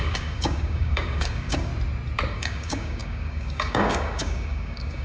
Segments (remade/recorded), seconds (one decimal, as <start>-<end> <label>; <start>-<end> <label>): 0.0-1.7 remade; 1.7-2.3 recorded; 2.3-5.0 remade